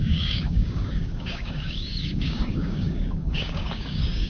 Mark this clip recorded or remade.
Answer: remade